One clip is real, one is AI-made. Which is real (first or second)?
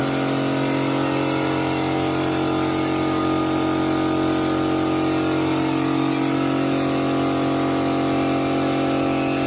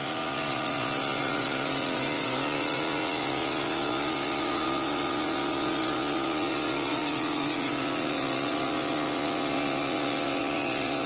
first